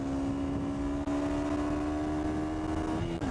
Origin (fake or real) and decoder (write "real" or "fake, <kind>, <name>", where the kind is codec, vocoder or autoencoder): real